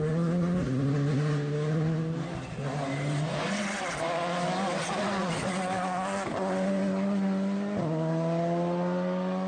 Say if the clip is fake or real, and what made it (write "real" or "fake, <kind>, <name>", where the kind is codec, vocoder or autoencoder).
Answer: real